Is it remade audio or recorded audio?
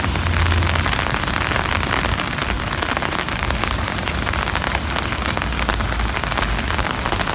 recorded